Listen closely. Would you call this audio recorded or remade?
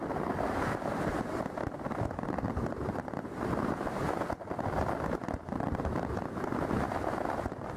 recorded